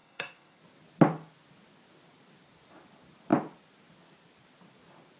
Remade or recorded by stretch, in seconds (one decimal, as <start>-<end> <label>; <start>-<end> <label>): 0.0-0.6 remade; 0.6-5.2 recorded